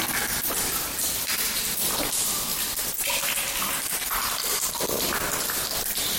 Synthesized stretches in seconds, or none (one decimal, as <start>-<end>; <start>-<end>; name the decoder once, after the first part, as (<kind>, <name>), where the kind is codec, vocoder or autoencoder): none